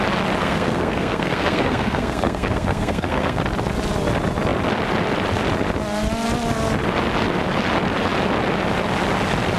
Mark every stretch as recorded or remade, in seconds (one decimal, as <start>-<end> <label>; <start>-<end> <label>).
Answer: 0.0-0.4 recorded; 0.4-3.4 remade; 3.4-9.6 recorded